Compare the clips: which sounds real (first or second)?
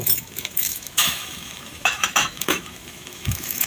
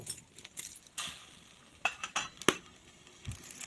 second